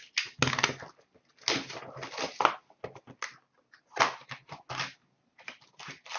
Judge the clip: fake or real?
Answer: real